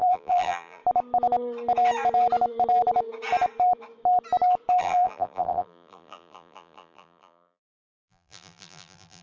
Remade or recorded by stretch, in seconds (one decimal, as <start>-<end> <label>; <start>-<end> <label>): 0.0-0.8 remade; 0.8-4.8 recorded; 4.8-9.2 remade